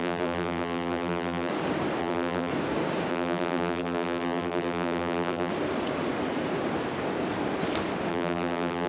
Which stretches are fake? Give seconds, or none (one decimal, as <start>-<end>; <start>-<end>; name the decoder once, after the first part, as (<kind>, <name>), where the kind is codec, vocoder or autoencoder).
0.0-1.5 (vocoder, BigVGAN v2); 2.0-2.5; 3.1-5.5; 8.1-8.9